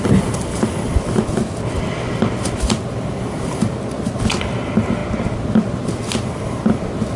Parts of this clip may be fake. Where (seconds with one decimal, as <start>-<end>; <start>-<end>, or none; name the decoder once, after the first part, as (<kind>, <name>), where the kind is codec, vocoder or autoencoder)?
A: none